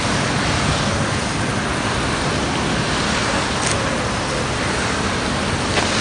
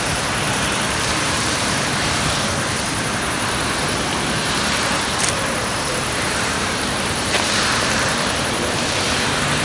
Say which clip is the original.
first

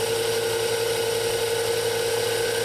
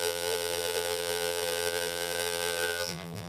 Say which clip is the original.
first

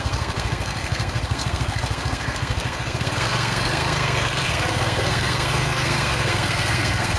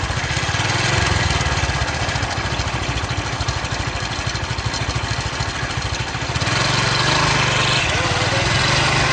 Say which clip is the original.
second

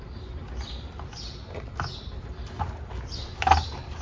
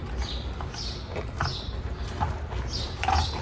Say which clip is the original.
second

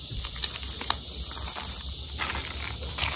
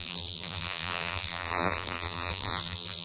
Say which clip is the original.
first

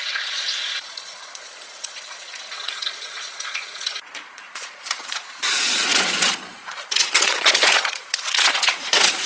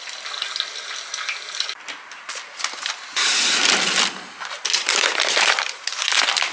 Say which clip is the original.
second